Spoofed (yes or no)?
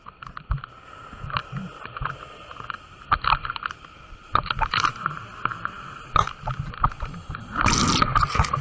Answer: no